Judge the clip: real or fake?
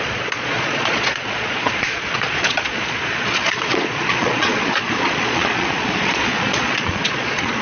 fake